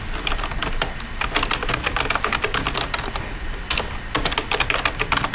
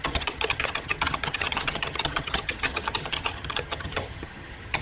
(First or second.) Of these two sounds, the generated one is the second